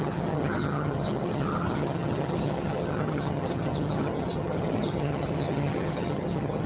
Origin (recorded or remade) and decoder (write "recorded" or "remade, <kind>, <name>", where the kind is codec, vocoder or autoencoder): remade, vocoder, HiFi-GAN